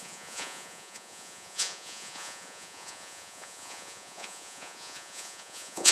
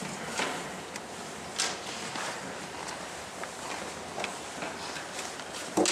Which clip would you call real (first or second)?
second